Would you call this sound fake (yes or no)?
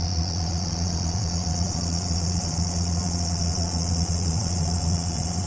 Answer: yes